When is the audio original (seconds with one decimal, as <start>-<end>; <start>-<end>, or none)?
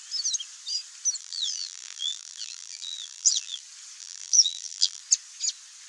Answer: 0.0-1.2; 3.6-4.0; 5.0-5.9